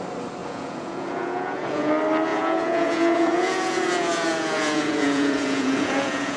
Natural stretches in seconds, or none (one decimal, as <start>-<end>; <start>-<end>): 0.0-0.4; 1.9-2.3